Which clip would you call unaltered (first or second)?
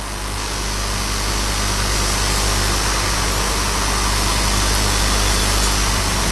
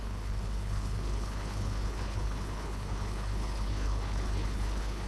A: first